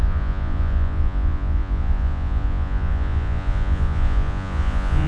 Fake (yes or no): yes